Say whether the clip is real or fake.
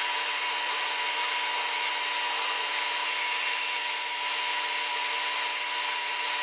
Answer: real